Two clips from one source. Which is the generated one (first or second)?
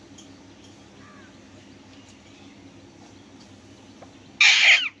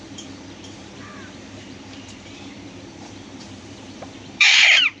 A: second